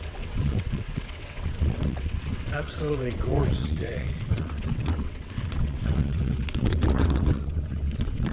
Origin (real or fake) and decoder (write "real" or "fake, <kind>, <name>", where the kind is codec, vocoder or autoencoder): fake, vocoder, WaveNeXt